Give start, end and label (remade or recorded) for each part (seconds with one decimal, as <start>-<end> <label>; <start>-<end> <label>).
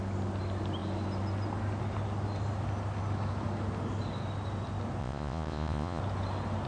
0.0-5.0 recorded; 5.0-6.0 remade; 6.0-6.7 recorded